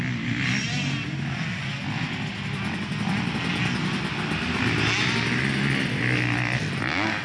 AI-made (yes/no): no